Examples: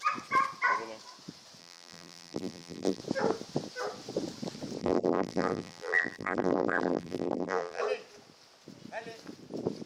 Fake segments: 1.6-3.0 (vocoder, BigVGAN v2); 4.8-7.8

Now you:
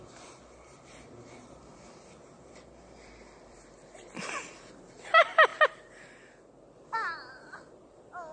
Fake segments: 0.0-5.5 (vocoder, BigVGAN v2); 7.3-8.3

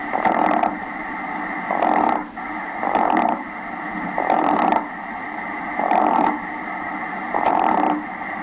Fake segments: 0.0-4.7 (vocoder, BigVGAN v2); 5.5-8.4

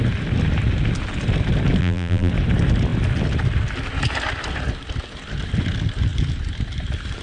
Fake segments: 1.8-2.3 (vocoder, BigVGAN v2)